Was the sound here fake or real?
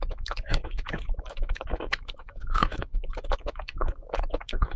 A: fake